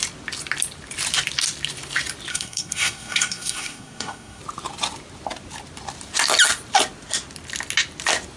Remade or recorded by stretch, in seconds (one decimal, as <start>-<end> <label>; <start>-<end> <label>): 0.0-2.3 recorded; 2.3-4.4 remade; 4.4-8.4 recorded